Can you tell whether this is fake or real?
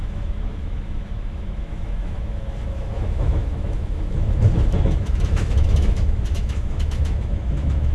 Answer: fake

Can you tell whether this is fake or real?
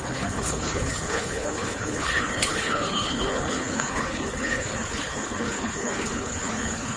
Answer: fake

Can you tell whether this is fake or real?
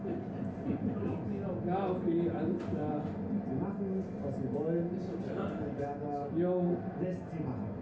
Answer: real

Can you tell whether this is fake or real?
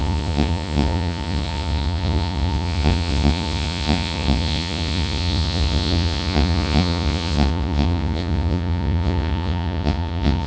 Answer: fake